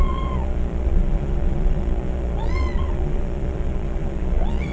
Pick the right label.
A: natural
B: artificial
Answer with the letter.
B